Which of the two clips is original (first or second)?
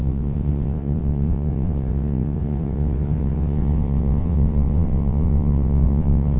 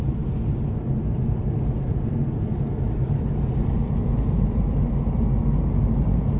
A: second